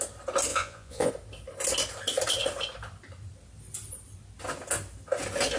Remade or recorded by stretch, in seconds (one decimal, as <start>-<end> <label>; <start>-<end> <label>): 0.0-0.5 recorded; 0.5-1.1 remade; 1.1-5.6 recorded